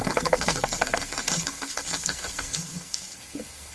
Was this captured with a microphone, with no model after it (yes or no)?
no